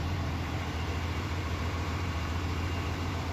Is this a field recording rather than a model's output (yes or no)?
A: no